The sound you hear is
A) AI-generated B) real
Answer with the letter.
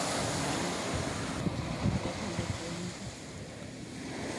B